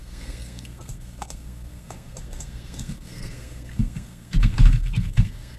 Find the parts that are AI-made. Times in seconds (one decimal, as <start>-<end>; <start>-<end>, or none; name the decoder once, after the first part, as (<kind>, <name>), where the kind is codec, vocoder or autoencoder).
0.0-5.6 (codec, SNAC)